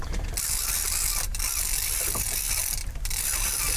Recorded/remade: recorded